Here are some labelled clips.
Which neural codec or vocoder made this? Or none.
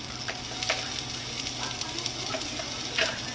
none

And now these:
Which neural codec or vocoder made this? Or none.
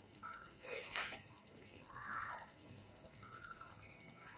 codec, SNAC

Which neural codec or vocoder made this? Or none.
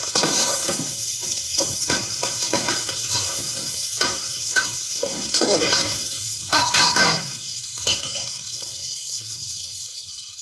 codec, SNAC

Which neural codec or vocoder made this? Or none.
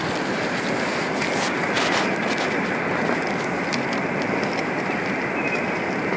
none